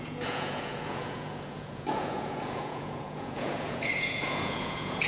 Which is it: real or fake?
fake